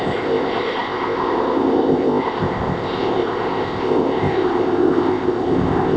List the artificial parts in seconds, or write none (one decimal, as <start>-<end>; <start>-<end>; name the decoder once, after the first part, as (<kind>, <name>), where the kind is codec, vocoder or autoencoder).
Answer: 0.0-6.0 (codec, ZipCodec)